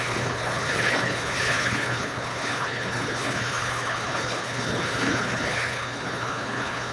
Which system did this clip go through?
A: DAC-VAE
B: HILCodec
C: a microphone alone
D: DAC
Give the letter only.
B